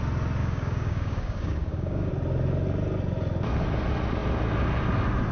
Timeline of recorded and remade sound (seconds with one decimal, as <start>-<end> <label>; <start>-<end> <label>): 0.0-0.4 recorded; 0.4-2.1 remade; 2.1-5.3 recorded